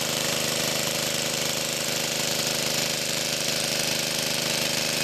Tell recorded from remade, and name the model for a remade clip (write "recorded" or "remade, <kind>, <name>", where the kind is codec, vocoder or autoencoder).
remade, vocoder, BigVGAN v2